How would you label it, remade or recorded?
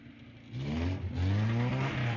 recorded